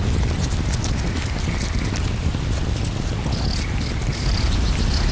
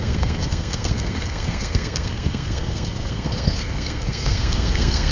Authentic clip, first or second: first